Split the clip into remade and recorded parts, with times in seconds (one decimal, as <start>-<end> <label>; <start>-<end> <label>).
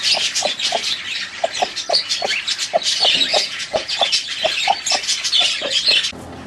0.0-3.3 recorded; 3.3-4.1 remade; 4.1-6.5 recorded